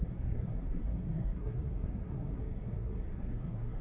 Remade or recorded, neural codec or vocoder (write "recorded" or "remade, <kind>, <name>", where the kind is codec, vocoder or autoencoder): remade, codec, SNAC